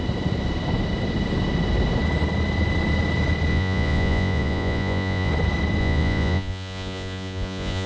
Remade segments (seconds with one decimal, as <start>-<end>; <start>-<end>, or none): 3.5-5.3; 5.8-7.9